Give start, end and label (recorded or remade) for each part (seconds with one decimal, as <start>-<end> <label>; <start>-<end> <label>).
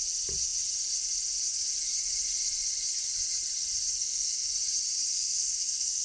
0.0-4.0 recorded; 4.0-4.5 remade; 4.5-5.1 recorded; 5.1-6.0 remade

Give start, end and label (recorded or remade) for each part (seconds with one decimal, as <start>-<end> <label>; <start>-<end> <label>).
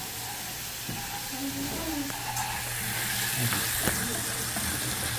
0.0-5.2 recorded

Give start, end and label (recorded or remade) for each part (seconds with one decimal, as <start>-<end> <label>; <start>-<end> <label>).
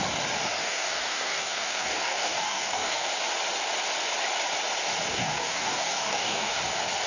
0.0-0.6 recorded; 0.6-3.1 remade; 3.1-5.1 recorded; 5.1-6.6 remade; 6.6-7.1 recorded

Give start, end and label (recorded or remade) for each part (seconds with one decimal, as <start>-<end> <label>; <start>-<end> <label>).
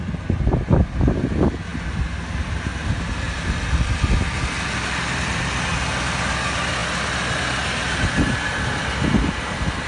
0.0-9.9 recorded